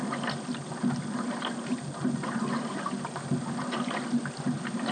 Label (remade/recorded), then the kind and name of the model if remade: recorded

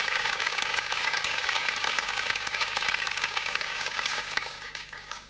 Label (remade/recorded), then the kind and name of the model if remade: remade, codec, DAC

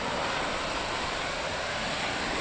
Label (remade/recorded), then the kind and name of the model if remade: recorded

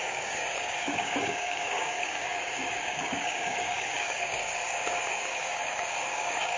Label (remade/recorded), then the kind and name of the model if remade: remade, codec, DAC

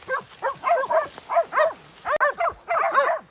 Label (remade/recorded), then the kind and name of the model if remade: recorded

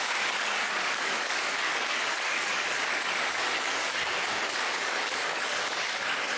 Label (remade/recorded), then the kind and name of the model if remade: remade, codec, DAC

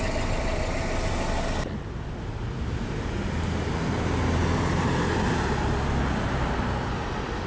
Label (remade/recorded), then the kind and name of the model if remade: recorded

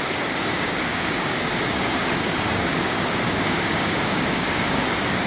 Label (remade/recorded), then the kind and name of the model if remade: remade, codec, DAC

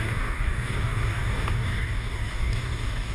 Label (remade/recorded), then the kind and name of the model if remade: remade, codec, DAC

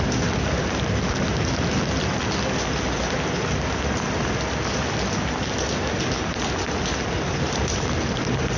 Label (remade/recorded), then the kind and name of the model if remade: recorded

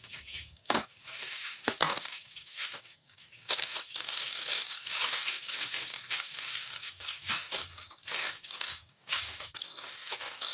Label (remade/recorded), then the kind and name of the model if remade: remade, codec, DAC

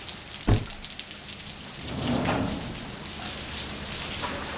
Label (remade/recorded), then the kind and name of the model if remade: recorded